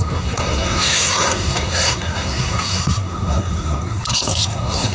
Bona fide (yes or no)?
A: no